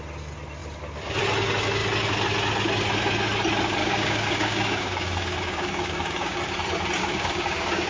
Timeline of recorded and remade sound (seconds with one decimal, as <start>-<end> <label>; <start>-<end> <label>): 0.0-3.8 recorded; 3.8-6.4 remade; 6.4-7.0 recorded; 7.0-7.9 remade